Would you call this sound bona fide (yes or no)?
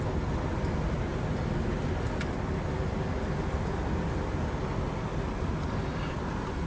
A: yes